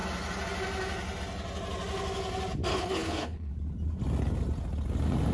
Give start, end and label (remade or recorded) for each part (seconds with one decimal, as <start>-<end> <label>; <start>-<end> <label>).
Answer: 0.0-2.7 recorded; 2.7-3.5 remade; 3.5-5.3 recorded